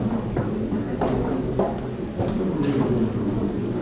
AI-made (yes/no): yes